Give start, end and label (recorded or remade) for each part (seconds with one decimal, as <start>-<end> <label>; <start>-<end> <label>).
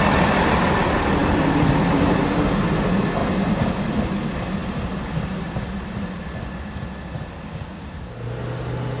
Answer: 0.0-9.0 recorded